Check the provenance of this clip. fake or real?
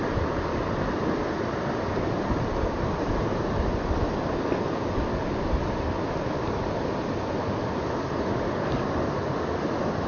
real